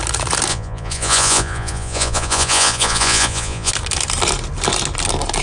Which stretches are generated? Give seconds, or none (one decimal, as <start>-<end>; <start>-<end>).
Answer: 0.5-3.7